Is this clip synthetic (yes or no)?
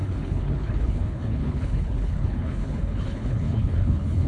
yes